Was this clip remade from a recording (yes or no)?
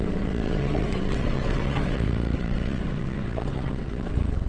yes